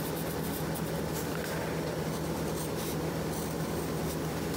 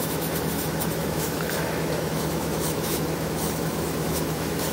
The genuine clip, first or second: first